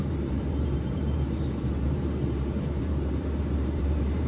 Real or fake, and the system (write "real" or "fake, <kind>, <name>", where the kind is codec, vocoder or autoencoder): fake, vocoder, BigVGAN v2